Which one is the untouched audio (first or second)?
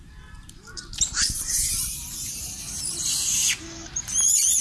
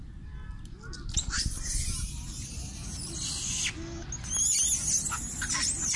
second